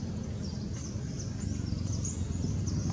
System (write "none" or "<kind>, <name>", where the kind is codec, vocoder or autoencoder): none